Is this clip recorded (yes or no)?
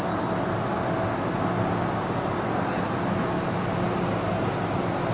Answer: yes